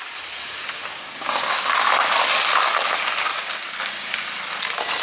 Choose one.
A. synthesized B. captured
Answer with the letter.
B